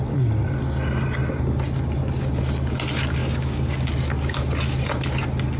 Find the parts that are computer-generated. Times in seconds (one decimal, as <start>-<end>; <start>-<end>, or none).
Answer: 3.2-3.9